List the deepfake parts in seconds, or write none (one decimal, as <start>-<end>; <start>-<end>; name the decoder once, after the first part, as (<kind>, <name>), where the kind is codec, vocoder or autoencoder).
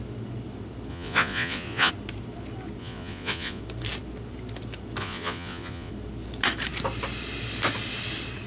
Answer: 0.9-1.9 (vocoder, Vocos); 2.8-3.6; 5.0-5.9